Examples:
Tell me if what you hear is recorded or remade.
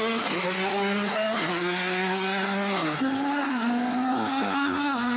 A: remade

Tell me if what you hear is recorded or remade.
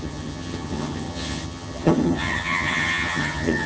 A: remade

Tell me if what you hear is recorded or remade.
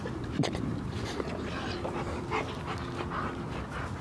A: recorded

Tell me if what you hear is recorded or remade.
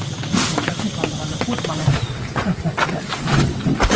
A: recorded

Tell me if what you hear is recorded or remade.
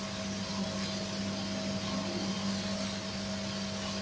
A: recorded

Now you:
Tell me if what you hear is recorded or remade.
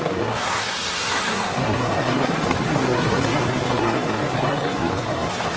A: remade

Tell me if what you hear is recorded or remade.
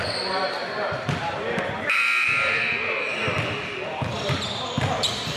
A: remade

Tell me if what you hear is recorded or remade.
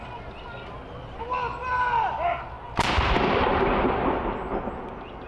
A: recorded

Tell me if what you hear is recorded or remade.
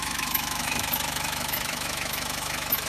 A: remade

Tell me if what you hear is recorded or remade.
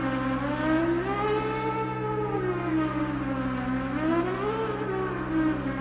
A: recorded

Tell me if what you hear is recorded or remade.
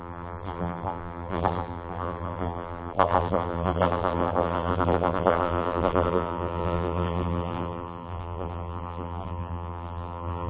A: remade